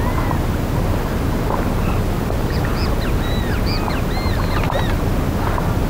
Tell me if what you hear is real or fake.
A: real